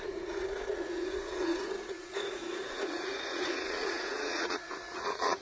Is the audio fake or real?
fake